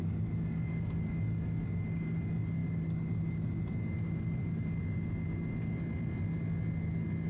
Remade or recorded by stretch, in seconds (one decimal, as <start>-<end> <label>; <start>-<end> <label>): 0.0-7.3 recorded